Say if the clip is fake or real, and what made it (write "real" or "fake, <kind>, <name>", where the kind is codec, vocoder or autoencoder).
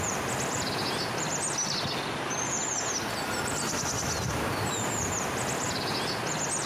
real